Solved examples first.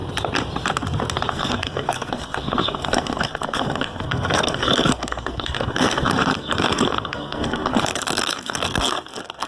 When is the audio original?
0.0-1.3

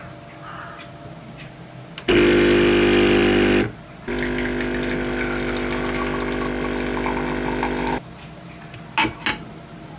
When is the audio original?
0.0-10.0

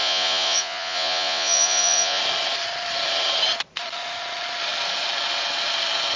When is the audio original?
2.2-6.2

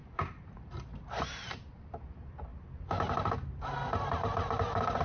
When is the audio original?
0.0-5.0

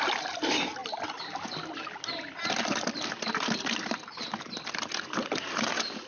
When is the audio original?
0.0-6.1

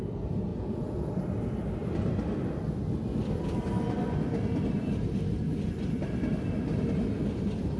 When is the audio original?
0.0-0.5; 1.1-7.8

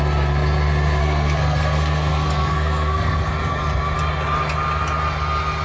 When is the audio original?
0.0-1.0; 3.3-5.6

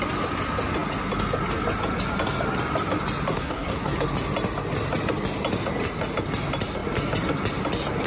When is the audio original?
0.0-3.3; 3.9-8.1